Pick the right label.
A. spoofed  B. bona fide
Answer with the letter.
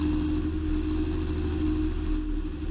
B